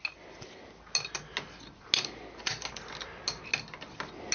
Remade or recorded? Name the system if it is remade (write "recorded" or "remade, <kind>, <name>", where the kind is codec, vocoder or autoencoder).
recorded